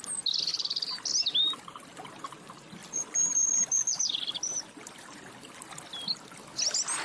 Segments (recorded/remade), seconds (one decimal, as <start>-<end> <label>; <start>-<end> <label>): 0.0-0.5 recorded; 0.5-1.1 remade; 1.1-2.8 recorded; 2.8-5.2 remade; 5.2-7.0 recorded